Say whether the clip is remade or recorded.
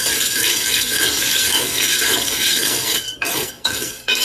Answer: remade